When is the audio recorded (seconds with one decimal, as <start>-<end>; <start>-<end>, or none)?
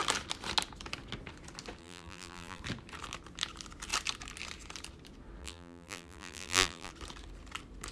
0.0-1.8; 2.6-5.4; 6.9-7.9